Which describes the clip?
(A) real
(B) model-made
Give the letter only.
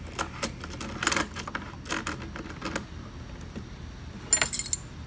A